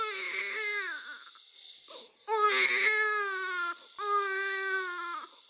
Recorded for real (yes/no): yes